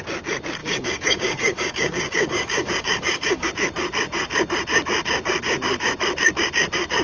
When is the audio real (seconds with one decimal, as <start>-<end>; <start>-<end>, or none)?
0.0-0.6; 3.5-7.0